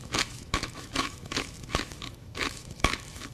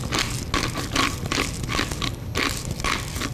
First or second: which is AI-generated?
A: first